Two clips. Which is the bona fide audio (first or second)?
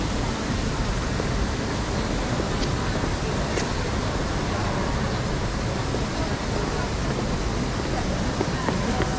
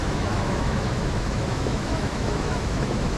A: first